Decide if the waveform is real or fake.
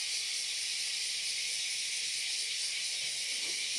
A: real